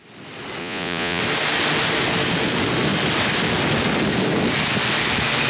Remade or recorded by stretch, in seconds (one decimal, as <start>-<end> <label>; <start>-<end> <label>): 0.0-0.6 recorded; 0.6-1.2 remade; 1.2-5.5 recorded